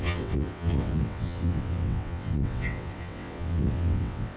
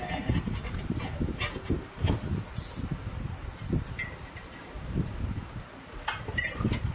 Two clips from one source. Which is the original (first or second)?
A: second